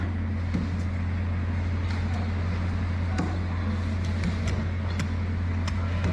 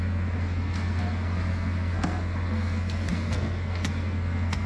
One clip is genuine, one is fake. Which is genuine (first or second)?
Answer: first